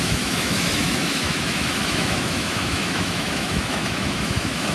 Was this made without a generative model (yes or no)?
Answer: no